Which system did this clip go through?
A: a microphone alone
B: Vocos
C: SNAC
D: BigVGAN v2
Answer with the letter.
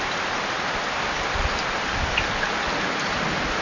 A